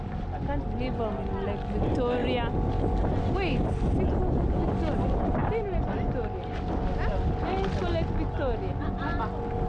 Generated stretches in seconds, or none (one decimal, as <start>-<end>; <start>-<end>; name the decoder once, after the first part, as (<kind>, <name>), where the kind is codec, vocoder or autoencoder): none